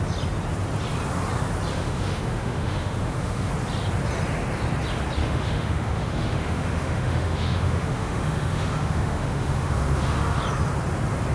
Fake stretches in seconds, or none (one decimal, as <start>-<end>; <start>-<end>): 1.7-3.5; 5.2-10.4